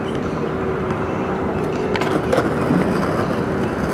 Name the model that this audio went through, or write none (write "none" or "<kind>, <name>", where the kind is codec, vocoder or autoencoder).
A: none